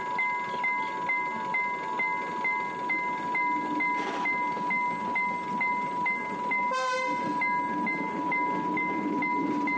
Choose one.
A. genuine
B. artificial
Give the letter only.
A